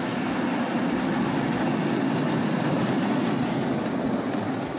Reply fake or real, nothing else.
real